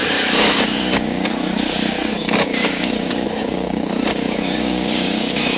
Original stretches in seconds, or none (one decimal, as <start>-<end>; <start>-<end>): none